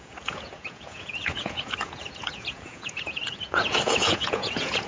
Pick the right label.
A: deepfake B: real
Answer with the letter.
A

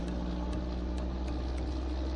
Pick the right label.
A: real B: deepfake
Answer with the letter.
A